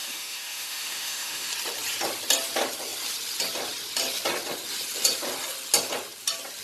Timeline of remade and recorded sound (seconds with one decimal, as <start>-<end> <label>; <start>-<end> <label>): 0.0-1.5 remade; 1.5-6.6 recorded